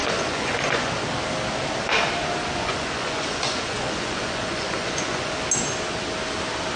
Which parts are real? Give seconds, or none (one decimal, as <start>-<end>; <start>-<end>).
0.9-2.5; 5.3-6.8